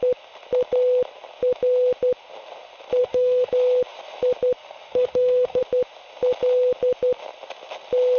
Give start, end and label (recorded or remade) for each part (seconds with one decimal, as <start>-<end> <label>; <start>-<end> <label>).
0.0-3.0 recorded; 3.0-3.5 remade; 3.5-4.6 recorded; 4.6-5.6 remade; 5.6-8.2 recorded